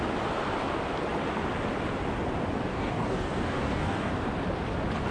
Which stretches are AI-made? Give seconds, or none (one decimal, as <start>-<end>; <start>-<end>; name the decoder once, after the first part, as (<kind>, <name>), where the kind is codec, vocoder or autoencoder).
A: 2.7-4.1 (codec, DAC)